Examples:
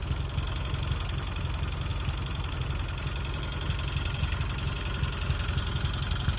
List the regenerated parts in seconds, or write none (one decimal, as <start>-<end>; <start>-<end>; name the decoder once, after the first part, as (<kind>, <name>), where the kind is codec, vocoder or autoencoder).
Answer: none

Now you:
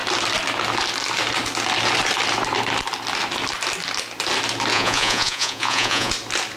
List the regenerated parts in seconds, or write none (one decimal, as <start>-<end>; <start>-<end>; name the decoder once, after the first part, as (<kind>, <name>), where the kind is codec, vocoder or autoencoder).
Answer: 4.7-6.1 (vocoder, Vocos)

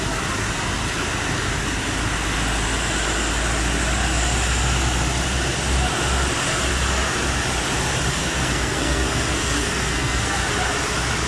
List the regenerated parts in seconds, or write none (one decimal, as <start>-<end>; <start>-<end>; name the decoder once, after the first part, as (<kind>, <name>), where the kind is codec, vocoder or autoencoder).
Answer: 8.2-10.5 (codec, SNAC)

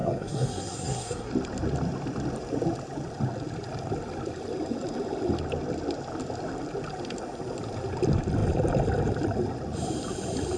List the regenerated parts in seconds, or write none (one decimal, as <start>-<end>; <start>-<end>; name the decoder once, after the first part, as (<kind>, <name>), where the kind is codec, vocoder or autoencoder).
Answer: 0.0-1.3 (codec, SNAC)